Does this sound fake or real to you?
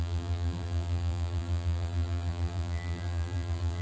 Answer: fake